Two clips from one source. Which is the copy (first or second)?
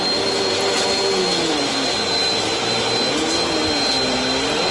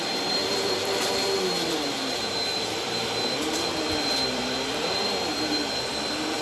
second